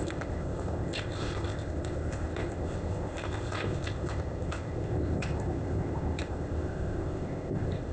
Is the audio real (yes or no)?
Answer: no